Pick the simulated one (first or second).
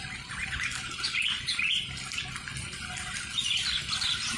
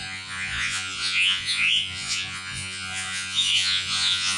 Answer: second